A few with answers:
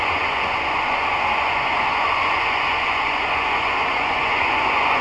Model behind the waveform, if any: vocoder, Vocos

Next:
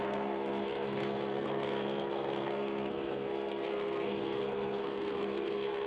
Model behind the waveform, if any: codec, SNAC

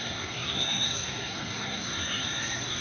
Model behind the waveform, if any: codec, SNAC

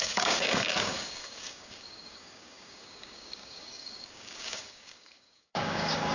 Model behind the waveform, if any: codec, DAC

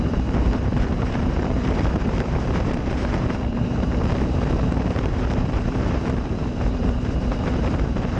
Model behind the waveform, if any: vocoder, BigVGAN v2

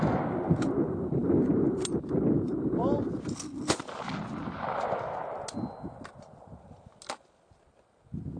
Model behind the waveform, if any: none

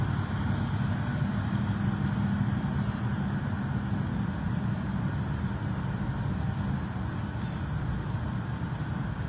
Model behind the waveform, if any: none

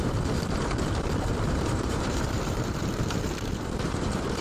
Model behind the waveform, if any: vocoder, BigVGAN v2